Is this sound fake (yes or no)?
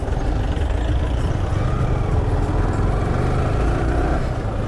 no